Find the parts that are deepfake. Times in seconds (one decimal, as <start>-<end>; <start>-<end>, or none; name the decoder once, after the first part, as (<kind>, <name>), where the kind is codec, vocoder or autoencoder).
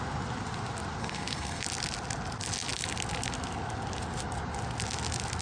1.0-1.6 (codec, SNAC)